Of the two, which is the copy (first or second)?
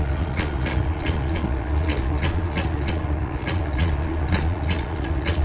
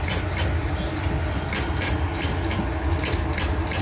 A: first